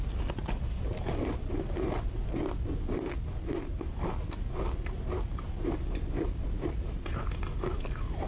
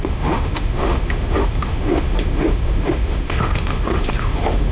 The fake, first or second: second